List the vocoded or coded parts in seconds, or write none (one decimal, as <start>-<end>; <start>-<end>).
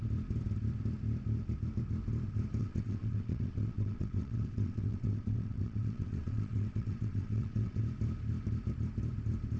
2.6-7.8